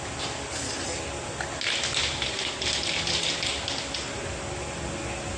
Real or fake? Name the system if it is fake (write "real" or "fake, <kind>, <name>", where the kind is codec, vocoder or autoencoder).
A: real